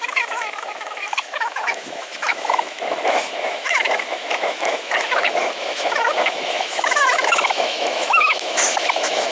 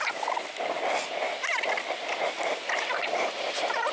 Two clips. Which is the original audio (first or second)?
second